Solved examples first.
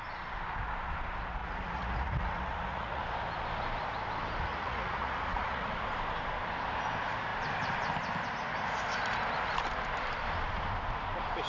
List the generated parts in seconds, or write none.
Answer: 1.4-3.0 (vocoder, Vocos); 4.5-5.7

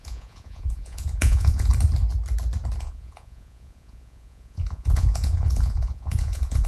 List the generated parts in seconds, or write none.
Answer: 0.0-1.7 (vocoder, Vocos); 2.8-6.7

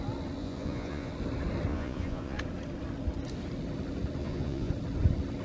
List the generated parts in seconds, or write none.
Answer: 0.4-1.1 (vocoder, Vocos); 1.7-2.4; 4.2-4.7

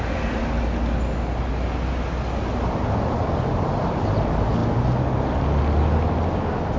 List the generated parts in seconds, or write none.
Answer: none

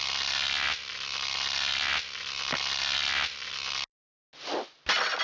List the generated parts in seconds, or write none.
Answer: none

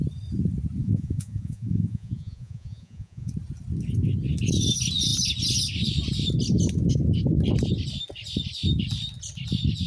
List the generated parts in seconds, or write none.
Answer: 0.8-3.3 (vocoder, Vocos)

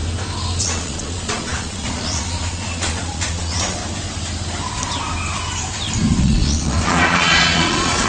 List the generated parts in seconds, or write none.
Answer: 0.6-3.8 (vocoder, Vocos); 6.2-8.1